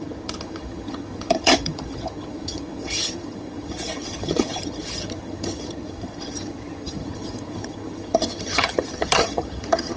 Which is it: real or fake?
fake